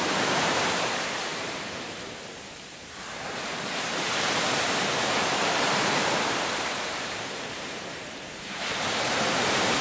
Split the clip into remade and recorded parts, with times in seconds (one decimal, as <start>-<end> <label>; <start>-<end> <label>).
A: 0.0-4.8 remade; 4.8-5.5 recorded; 5.5-9.8 remade